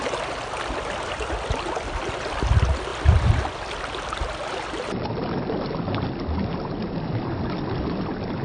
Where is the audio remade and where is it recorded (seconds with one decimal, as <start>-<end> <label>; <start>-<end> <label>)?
0.0-2.9 recorded; 2.9-3.4 remade; 3.4-8.4 recorded